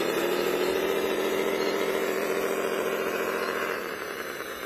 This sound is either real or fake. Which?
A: fake